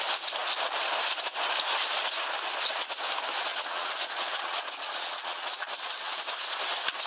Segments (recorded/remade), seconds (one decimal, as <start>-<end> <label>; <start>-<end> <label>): 0.0-3.5 recorded; 3.5-6.2 remade; 6.2-7.1 recorded